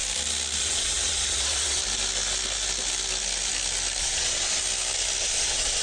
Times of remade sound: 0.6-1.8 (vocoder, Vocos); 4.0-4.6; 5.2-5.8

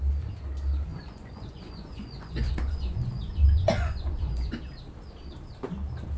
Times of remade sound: 0.9-4.6 (vocoder, Vocos)

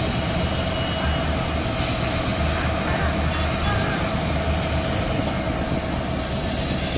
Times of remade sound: none

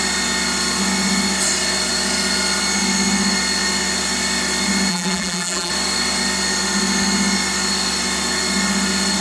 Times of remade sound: 4.9-5.7 (vocoder, BigVGAN v2)

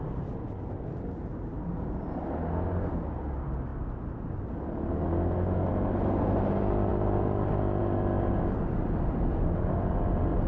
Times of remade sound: 1.3-2.3 (vocoder, BigVGAN v2)

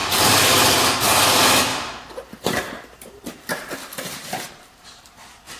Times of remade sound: 1.7-5.1 (vocoder, BigVGAN v2)